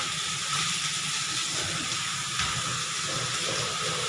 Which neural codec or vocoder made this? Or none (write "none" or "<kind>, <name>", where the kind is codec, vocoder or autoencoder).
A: none